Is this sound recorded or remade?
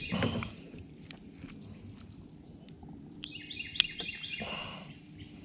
recorded